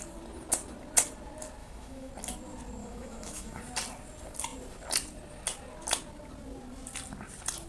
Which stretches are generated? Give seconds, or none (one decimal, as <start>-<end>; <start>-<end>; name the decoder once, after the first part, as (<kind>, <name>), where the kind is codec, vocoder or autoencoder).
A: 1.6-2.1 (autoencoder, DAC-VAE); 2.8-3.6